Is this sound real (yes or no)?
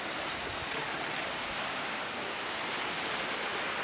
yes